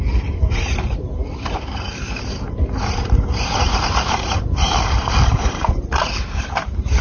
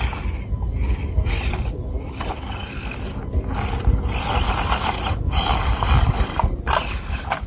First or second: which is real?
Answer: second